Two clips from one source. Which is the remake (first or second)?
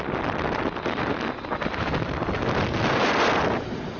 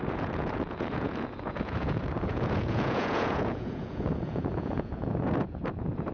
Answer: second